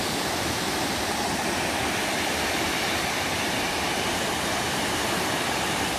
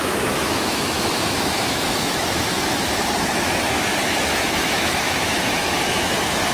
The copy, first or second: second